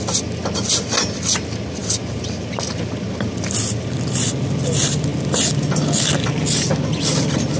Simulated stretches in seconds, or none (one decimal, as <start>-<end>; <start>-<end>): none